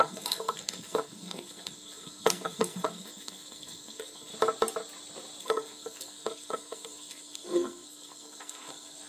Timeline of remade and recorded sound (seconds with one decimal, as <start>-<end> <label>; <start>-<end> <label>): 0.0-4.3 remade; 4.3-5.4 recorded; 5.4-9.1 remade

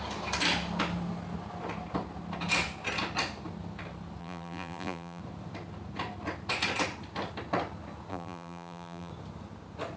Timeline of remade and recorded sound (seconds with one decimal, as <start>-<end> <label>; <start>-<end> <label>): 0.0-4.2 recorded; 4.2-5.2 remade; 5.2-8.1 recorded; 8.1-9.1 remade; 9.1-10.0 recorded

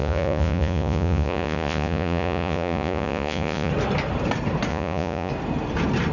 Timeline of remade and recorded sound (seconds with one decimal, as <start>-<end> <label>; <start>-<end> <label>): 0.0-3.7 remade; 3.7-4.7 recorded; 4.7-5.3 remade; 5.3-6.1 recorded